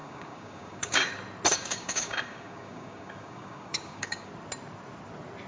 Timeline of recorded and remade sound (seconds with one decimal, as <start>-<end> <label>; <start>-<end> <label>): 0.0-1.1 remade; 1.1-1.5 recorded; 1.5-4.3 remade; 4.3-5.5 recorded